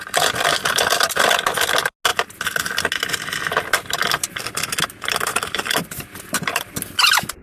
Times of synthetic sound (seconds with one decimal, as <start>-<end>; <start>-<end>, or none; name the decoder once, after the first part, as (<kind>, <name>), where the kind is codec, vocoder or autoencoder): 5.3-7.4 (vocoder, BigVGAN v2)